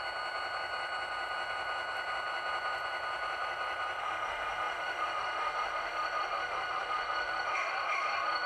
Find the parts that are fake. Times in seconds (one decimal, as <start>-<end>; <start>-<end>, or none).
4.0-8.5